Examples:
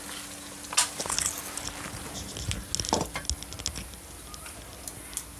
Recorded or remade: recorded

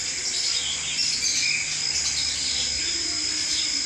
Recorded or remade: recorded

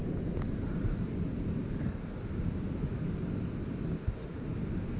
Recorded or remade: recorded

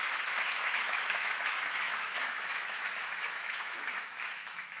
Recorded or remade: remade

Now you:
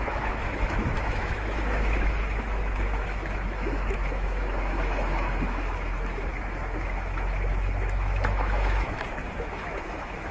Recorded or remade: remade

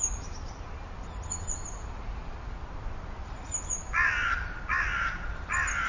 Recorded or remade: recorded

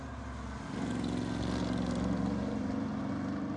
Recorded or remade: recorded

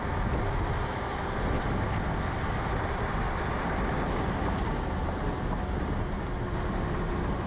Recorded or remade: recorded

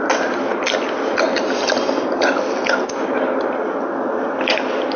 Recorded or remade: recorded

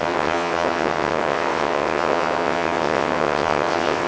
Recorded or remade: remade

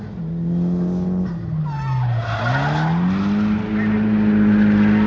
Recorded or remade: recorded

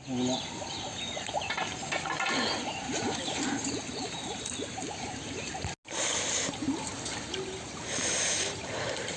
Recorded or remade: recorded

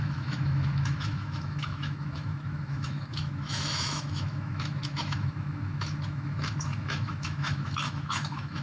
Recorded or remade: remade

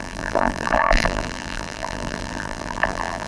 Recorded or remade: remade